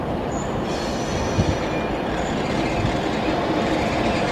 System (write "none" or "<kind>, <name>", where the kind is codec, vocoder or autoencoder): none